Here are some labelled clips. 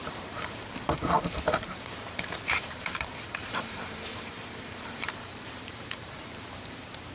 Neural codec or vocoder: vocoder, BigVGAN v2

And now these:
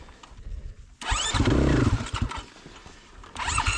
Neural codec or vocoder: vocoder, BigVGAN v2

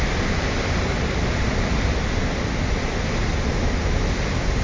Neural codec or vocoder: none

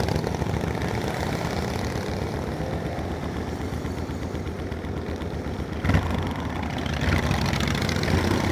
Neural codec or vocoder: none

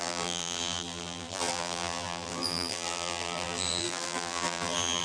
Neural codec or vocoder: vocoder, BigVGAN v2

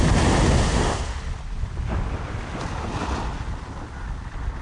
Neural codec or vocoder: none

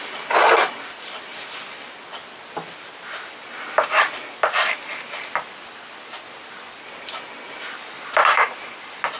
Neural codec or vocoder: none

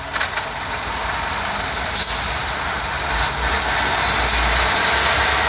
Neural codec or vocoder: none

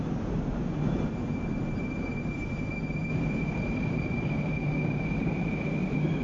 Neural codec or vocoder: vocoder, BigVGAN v2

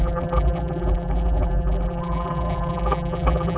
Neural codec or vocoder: vocoder, BigVGAN v2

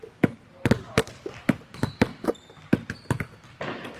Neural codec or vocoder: none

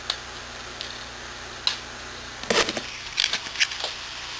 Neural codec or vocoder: none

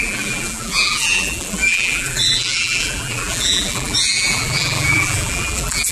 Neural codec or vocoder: vocoder, BigVGAN v2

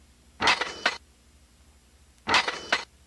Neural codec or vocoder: none